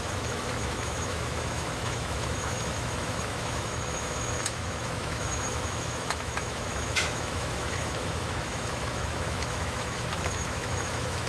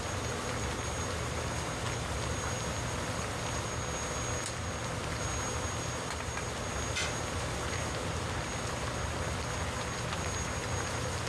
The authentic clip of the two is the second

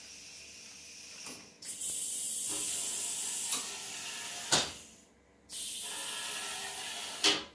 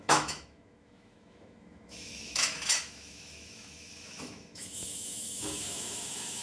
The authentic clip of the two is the first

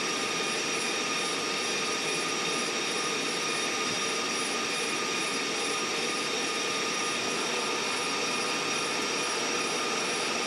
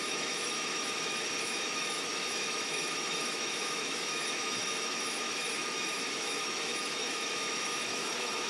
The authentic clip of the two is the first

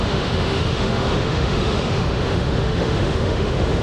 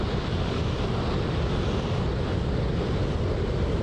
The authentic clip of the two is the second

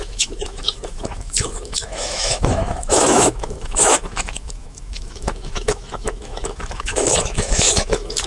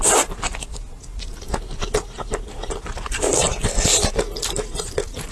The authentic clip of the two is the second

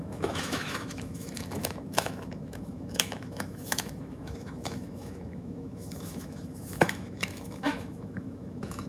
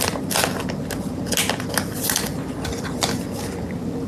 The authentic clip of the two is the second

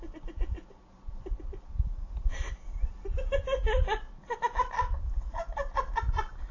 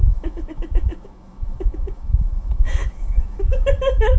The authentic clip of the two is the first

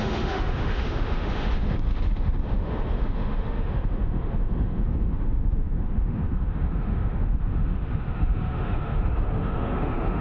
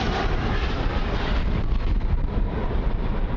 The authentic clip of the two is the second